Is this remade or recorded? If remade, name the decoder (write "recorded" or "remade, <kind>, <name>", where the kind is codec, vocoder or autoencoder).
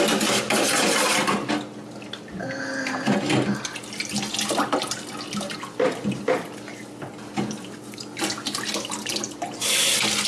recorded